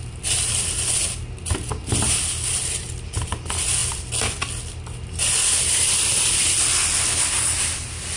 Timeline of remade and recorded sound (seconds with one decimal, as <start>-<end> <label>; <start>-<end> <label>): 0.0-8.2 recorded